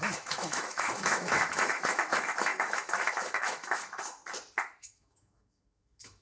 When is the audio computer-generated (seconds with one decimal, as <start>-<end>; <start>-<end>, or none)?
0.0-4.2; 4.8-6.2